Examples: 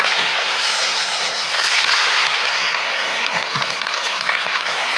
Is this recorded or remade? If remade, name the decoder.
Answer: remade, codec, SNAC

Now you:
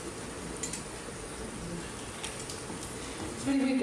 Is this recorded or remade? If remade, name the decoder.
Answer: recorded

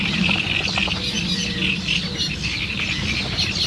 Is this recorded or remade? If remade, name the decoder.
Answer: recorded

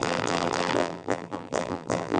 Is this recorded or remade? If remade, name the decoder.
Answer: remade, vocoder, BigVGAN v2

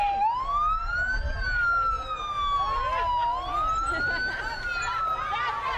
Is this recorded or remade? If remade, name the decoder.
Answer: recorded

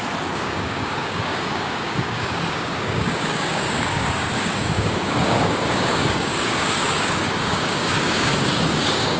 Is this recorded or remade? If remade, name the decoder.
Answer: remade, codec, DAC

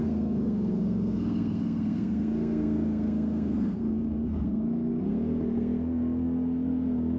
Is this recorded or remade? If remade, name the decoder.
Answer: remade, codec, SNAC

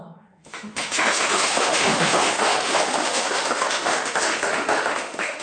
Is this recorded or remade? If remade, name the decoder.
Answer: remade, autoencoder, DAC-VAE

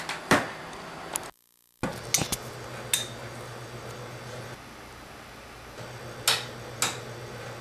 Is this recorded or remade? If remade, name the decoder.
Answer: recorded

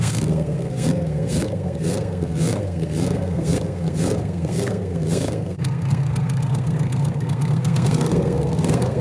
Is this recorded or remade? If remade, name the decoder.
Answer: remade, codec, SNAC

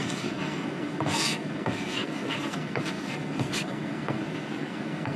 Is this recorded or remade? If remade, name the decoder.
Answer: remade, codec, SNAC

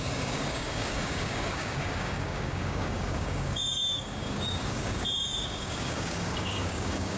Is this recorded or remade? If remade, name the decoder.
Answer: remade, codec, DAC